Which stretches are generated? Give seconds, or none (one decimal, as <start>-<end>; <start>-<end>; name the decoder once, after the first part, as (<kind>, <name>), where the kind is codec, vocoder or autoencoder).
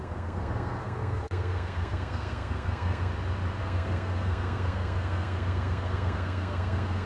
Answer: 0.0-3.1 (codec, SNAC); 3.6-7.1